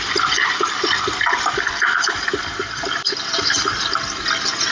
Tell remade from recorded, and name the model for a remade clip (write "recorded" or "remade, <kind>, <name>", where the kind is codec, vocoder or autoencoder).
recorded